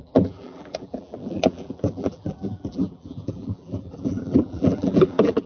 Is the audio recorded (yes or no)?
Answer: no